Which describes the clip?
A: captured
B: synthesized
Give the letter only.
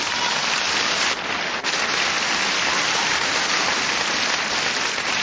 A